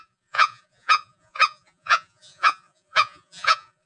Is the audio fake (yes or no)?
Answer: yes